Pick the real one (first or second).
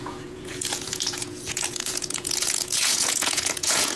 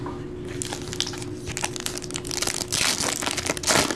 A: second